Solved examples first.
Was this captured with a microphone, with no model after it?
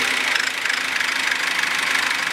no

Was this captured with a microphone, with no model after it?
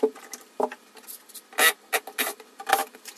yes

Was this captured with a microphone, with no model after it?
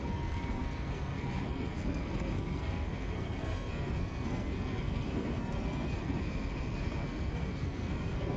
no